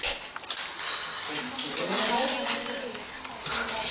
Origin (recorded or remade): recorded